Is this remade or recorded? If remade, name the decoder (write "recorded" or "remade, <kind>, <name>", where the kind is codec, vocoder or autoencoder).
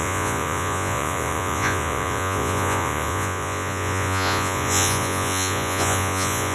remade, vocoder, Vocos